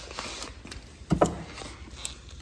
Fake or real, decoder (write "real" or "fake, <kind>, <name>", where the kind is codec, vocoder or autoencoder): real